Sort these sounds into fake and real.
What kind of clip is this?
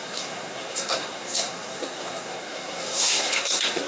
fake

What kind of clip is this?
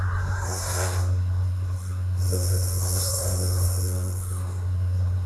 fake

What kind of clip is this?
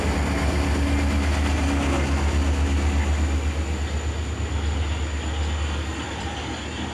real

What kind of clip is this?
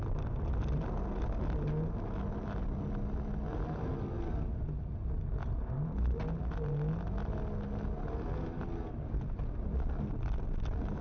real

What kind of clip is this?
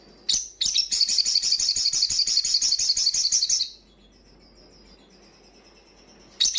real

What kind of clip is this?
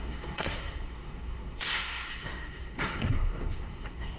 fake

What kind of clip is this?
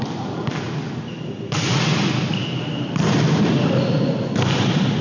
real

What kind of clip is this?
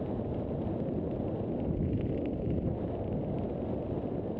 real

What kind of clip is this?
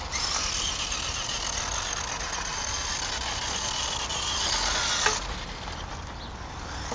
real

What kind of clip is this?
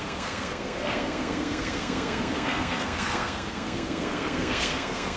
fake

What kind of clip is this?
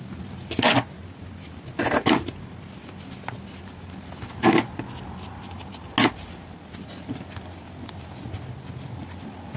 real